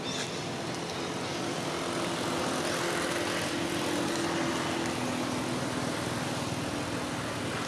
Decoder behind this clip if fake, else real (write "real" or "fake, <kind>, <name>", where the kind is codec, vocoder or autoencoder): real